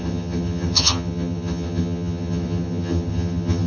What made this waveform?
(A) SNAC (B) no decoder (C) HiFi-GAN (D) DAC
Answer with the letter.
C